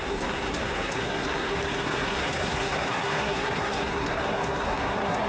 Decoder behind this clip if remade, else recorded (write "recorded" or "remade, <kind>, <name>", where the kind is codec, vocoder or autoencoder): remade, codec, SNAC